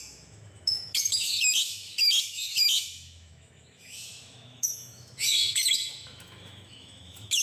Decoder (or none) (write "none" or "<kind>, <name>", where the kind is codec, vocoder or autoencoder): autoencoder, DAC-VAE